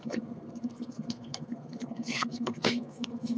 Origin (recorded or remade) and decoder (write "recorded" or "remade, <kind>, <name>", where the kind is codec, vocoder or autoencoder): remade, codec, SNAC